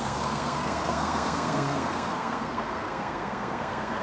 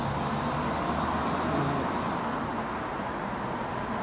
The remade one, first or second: first